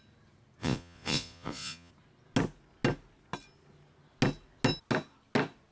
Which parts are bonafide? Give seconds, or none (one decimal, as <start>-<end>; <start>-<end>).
0.0-0.6; 1.9-5.7